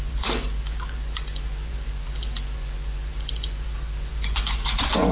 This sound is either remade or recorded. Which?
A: remade